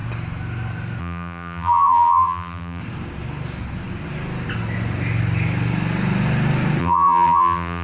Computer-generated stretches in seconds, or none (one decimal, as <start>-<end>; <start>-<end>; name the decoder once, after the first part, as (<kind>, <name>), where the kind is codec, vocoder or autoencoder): 1.0-2.8 (vocoder, BigVGAN v2); 6.8-7.8